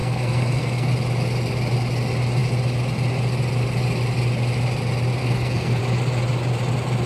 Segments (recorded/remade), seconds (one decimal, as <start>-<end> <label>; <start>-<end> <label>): 0.0-0.9 remade; 0.9-5.2 recorded; 5.2-5.8 remade; 5.8-7.1 recorded